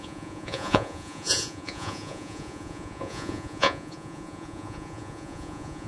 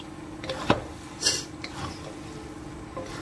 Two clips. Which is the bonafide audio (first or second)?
second